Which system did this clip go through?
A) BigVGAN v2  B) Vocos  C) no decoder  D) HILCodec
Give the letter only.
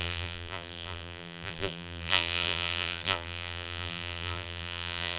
A